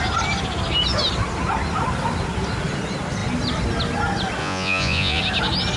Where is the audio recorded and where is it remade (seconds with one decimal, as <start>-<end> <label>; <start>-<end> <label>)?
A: 0.0-4.4 recorded; 4.4-5.2 remade; 5.2-5.8 recorded